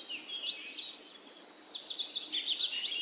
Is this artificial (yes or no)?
no